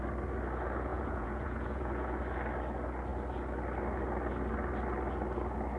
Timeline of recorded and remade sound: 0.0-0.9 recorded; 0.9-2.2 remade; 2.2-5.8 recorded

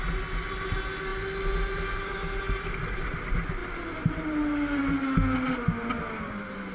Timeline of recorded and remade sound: 0.0-6.7 recorded

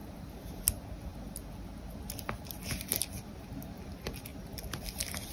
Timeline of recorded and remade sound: 0.0-0.6 remade; 0.6-5.3 recorded